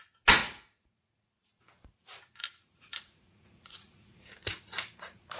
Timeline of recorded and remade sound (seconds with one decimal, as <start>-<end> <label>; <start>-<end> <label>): 0.0-0.4 recorded; 0.4-1.6 remade; 1.6-2.6 recorded; 2.6-5.4 remade

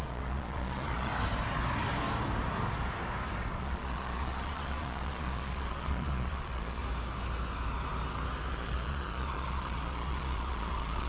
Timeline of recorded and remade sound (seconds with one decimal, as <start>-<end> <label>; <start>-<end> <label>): 0.0-1.1 remade; 1.1-3.6 recorded; 3.6-6.8 remade; 6.8-8.5 recorded; 8.5-11.1 remade

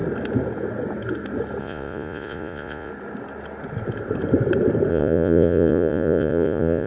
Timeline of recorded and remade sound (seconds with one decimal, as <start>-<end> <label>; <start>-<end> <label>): 0.0-1.6 recorded; 1.6-2.9 remade; 2.9-4.9 recorded; 4.9-6.9 remade

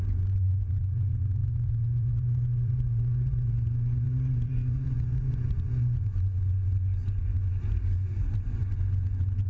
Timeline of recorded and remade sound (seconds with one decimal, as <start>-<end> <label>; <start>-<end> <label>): 0.0-9.5 remade

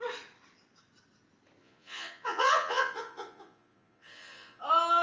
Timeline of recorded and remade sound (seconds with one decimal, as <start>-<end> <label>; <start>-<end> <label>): 0.0-1.6 recorded; 1.6-4.6 remade; 4.6-5.0 recorded